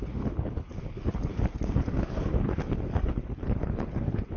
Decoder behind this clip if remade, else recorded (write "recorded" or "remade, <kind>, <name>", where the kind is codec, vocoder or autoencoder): remade, codec, HILCodec